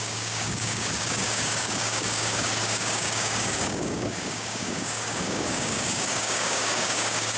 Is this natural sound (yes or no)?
no